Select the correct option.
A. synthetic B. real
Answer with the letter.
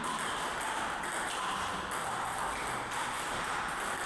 B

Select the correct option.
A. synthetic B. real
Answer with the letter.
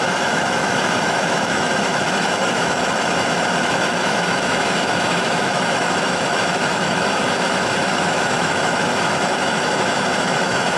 A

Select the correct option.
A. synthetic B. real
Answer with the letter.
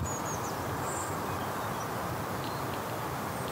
B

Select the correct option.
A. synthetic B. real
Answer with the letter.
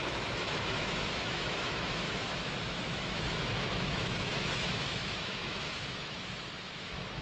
A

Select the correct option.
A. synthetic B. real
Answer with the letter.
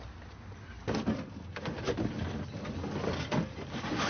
B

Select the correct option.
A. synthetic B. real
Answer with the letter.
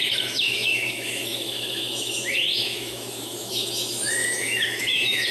A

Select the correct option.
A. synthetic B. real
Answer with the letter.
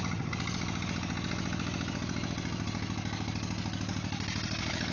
B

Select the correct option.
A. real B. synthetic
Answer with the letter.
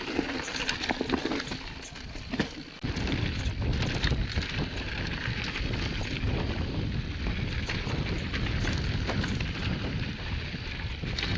A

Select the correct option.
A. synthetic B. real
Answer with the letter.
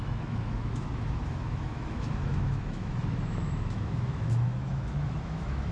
A